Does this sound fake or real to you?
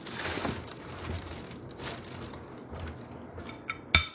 real